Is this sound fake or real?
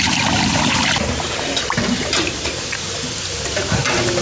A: real